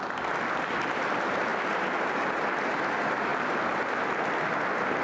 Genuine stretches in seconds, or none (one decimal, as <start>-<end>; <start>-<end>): 0.0-5.0